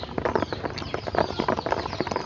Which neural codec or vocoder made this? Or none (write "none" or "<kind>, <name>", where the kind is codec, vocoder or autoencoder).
none